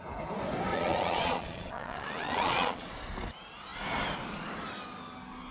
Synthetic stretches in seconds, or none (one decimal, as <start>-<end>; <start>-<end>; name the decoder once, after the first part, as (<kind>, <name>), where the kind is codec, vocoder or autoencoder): 0.7-2.9 (vocoder, Vocos)